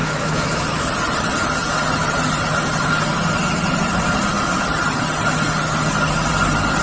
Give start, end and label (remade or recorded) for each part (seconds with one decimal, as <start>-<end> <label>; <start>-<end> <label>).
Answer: 0.0-0.9 remade; 0.9-6.8 recorded